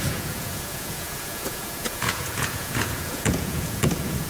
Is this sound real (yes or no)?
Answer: no